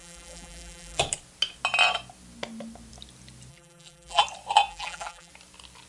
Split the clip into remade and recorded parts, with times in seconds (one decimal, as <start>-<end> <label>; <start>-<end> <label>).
0.0-1.0 remade; 1.0-3.5 recorded; 3.5-4.2 remade; 4.2-4.7 recorded; 4.7-5.3 remade; 5.3-5.9 recorded